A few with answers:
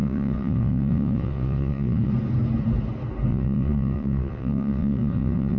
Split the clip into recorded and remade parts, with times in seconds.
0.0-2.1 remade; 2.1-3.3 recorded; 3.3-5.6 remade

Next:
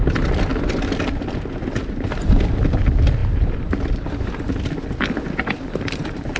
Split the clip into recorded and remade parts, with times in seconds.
0.0-3.2 recorded; 3.2-3.8 remade; 3.8-6.4 recorded

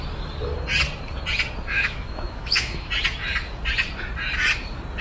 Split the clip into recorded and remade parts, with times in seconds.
0.0-1.7 recorded; 1.7-2.9 remade; 2.9-5.0 recorded

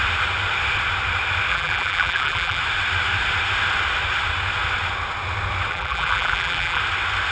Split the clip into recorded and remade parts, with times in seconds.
0.0-1.5 recorded; 1.5-2.6 remade; 2.6-5.7 recorded; 5.7-6.8 remade; 6.8-7.3 recorded

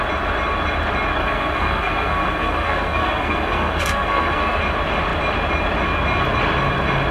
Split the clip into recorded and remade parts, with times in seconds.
0.0-1.2 recorded; 1.2-4.6 remade; 4.6-7.1 recorded

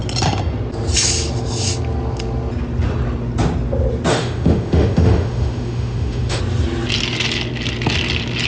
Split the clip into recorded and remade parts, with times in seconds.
0.0-4.1 recorded; 4.1-6.4 remade; 6.4-8.5 recorded

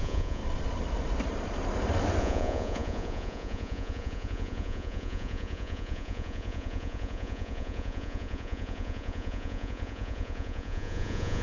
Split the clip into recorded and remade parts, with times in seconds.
0.0-0.4 remade; 0.4-2.2 recorded; 2.2-11.4 remade